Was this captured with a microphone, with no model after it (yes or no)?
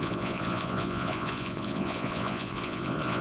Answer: no